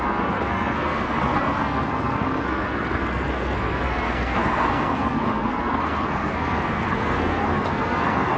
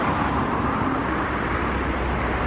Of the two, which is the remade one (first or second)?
first